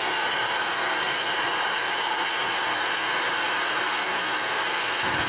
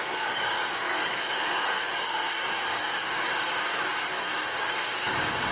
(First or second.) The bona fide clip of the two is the first